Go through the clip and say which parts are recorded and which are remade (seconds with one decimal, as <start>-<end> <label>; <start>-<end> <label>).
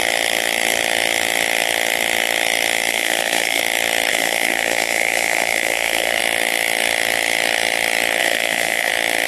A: 0.0-2.9 recorded; 2.9-3.6 remade; 3.6-4.1 recorded; 4.1-6.2 remade; 6.2-8.2 recorded; 8.2-8.9 remade; 8.9-9.3 recorded